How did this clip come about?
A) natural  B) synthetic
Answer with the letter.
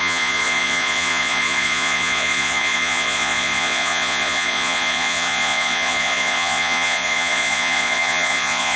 B